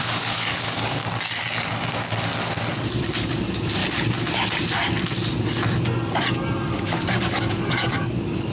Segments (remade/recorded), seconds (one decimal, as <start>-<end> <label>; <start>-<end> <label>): 0.0-1.0 remade; 1.0-3.0 recorded; 3.0-3.8 remade; 3.8-6.8 recorded; 6.8-8.5 remade